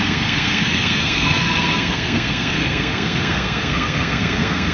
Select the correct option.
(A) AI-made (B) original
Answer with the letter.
A